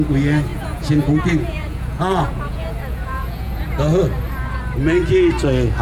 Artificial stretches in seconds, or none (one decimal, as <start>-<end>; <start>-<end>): 0.5-4.0